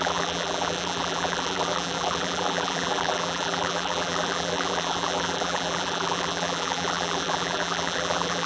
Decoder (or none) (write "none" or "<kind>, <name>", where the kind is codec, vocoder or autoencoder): vocoder, BigVGAN v2